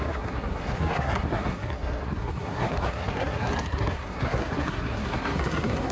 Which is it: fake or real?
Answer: fake